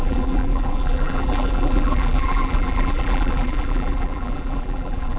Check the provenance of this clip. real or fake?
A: fake